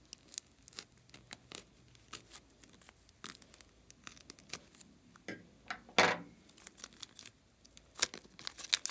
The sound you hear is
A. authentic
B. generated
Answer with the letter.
A